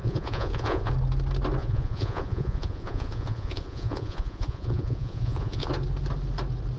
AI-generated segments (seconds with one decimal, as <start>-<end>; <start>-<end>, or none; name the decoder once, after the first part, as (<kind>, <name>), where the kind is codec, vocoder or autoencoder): 0.0-0.9 (vocoder, Vocos); 1.6-5.7

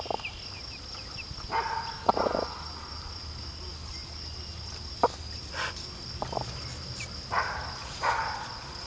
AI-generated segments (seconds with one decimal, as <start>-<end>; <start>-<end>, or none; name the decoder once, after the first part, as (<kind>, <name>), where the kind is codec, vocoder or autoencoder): 7.8-8.9 (vocoder, Vocos)

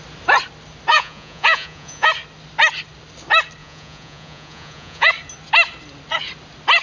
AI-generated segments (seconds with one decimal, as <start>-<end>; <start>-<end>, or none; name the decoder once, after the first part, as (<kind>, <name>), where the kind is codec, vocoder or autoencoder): 0.9-2.1 (vocoder, Vocos); 3.6-5.1

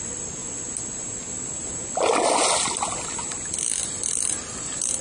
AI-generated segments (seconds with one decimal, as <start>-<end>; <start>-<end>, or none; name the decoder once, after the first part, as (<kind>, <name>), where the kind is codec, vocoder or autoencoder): none